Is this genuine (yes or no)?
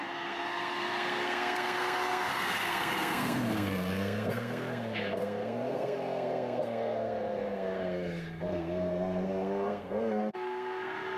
no